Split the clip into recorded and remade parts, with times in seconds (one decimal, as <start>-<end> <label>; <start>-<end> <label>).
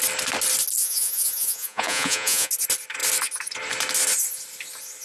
0.0-0.8 recorded; 0.8-2.5 remade; 2.5-5.0 recorded